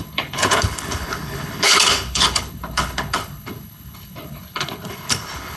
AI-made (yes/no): yes